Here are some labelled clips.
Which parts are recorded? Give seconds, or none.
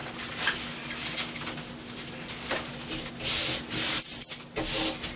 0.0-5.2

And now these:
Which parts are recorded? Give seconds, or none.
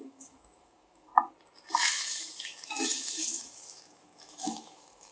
1.1-1.7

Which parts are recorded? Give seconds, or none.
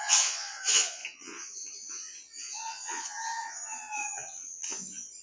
none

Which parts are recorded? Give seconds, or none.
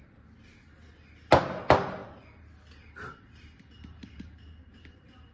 0.0-5.3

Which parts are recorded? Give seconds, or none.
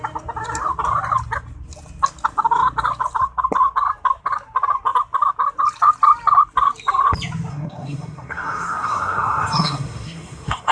0.0-7.5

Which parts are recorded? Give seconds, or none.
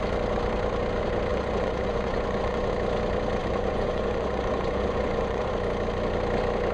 0.0-1.3; 2.7-3.4; 5.5-6.7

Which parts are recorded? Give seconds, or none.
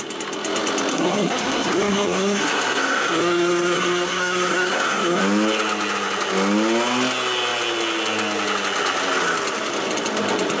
0.0-0.9; 5.2-10.6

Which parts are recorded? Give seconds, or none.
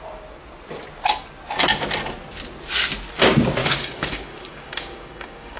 0.0-3.6